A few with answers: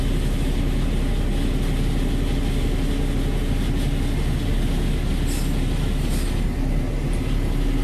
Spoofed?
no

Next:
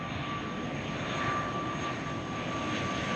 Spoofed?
no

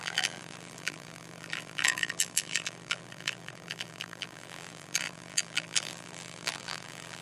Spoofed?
yes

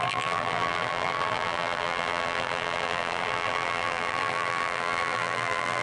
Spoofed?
yes